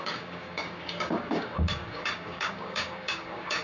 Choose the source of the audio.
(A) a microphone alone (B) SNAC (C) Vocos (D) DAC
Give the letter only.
D